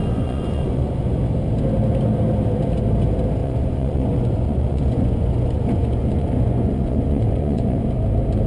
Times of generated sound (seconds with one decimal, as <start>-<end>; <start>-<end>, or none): 0.0-1.2; 3.4-7.9